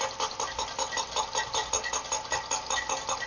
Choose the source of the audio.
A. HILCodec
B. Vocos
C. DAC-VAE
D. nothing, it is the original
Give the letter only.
D